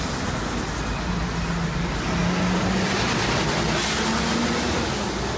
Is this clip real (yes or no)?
yes